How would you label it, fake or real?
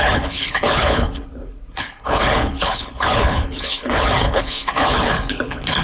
fake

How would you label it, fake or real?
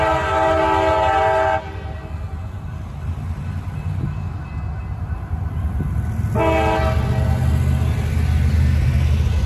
real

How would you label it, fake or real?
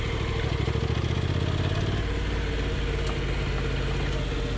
real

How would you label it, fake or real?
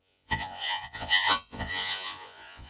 fake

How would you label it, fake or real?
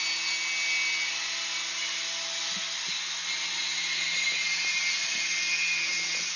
real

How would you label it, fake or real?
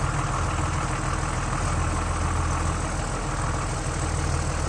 real